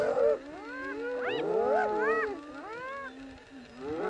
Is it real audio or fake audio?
real